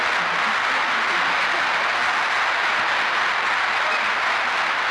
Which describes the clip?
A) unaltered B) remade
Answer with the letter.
A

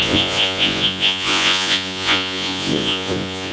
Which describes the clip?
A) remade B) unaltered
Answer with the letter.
A